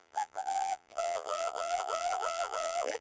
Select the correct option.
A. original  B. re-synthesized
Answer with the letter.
B